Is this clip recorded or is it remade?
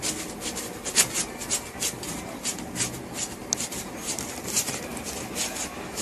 recorded